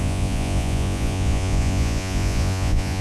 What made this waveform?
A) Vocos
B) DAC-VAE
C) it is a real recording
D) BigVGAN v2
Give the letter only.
A